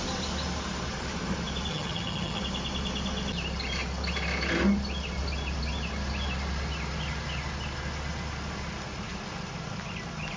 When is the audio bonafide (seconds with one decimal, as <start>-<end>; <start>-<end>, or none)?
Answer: 0.0-1.7; 2.4-10.4